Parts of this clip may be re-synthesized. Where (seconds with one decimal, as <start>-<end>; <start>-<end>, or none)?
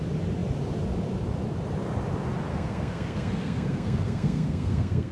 2.5-5.1